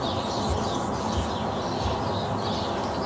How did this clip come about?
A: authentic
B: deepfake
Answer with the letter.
A